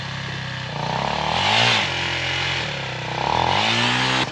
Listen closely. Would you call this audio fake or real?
real